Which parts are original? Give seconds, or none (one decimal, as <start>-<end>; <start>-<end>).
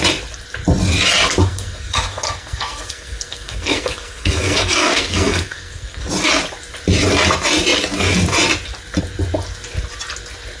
0.0-1.4; 6.1-10.6